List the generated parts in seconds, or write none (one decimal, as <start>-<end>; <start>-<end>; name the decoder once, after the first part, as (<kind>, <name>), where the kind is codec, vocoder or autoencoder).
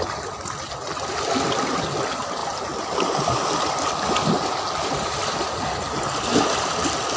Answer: 2.4-6.7 (vocoder, BigVGAN v2)